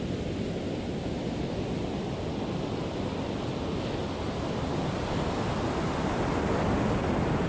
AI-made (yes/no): no